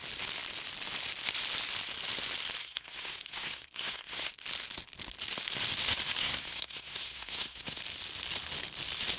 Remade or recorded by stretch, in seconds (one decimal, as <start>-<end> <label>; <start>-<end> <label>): 0.0-2.6 recorded; 2.6-4.3 remade; 4.3-6.2 recorded; 6.2-7.8 remade; 7.8-9.2 recorded